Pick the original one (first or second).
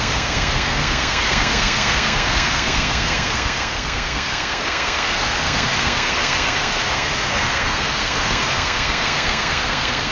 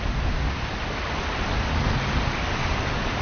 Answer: second